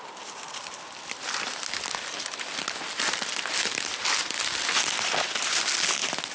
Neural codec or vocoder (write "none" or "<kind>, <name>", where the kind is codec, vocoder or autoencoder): none